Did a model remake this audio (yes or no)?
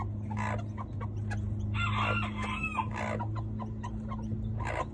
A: no